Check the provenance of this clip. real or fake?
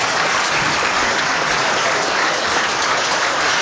fake